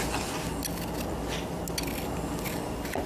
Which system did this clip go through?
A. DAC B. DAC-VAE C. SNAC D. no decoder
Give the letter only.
D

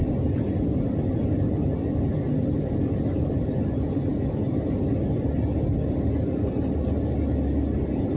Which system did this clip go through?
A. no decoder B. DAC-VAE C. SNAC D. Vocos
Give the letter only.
A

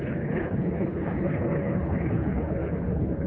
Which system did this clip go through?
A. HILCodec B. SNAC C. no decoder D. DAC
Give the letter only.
A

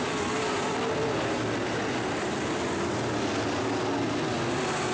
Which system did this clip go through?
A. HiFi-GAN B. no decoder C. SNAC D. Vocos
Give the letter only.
B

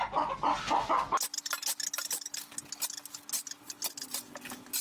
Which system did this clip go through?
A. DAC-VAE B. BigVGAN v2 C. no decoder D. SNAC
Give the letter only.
C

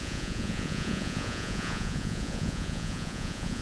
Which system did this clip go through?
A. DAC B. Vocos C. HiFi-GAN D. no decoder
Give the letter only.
B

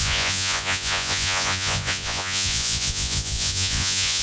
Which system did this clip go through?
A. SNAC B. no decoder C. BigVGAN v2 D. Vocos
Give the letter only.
D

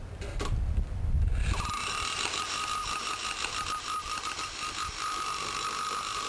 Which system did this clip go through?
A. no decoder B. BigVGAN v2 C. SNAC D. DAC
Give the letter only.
A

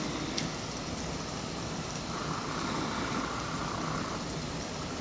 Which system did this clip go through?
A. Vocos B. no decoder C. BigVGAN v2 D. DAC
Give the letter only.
B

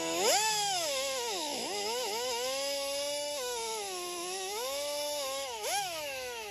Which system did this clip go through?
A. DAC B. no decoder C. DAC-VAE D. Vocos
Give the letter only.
C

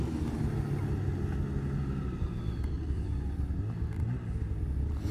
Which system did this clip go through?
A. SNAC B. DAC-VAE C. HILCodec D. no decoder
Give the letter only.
D